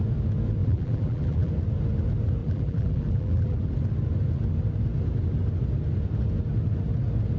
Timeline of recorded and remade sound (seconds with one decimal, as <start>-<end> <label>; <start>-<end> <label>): 0.0-0.6 recorded; 0.6-1.5 remade; 1.5-2.4 recorded; 2.4-3.7 remade; 3.7-7.4 recorded